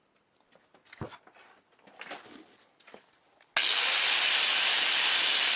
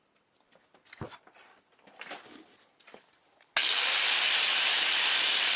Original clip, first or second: first